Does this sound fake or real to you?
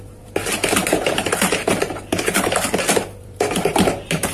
fake